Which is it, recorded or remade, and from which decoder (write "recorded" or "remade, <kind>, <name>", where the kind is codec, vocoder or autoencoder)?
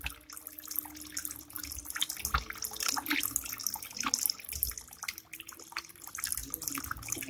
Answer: recorded